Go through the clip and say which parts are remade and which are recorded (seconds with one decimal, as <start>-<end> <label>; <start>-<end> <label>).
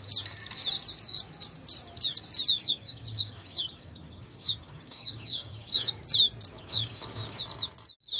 0.0-2.6 recorded; 2.6-6.0 remade; 6.0-6.6 recorded; 6.6-7.4 remade; 7.4-8.2 recorded